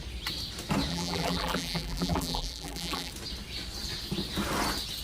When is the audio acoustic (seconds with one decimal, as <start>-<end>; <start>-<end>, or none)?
0.0-0.9; 3.1-5.0